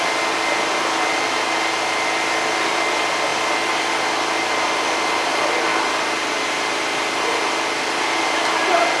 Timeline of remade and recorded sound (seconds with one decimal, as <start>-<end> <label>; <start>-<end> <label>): 0.0-9.0 recorded